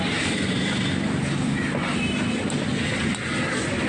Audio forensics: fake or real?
real